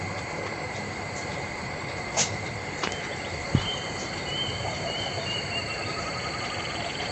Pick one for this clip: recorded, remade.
remade